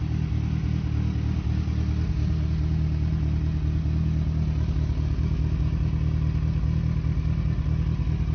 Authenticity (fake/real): real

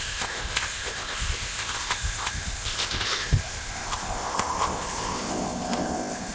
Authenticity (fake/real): fake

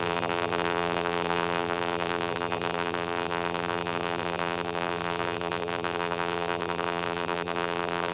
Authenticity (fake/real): fake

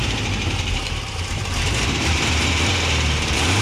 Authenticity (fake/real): fake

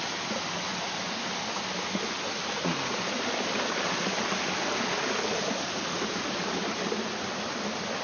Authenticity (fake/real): real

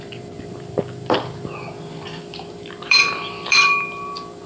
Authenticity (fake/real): fake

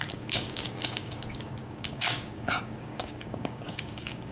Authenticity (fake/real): fake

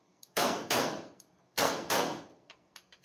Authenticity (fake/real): fake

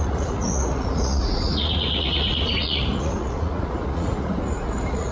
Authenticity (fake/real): fake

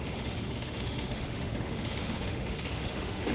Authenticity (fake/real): fake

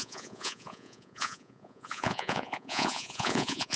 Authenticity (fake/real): fake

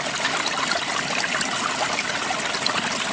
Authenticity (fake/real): real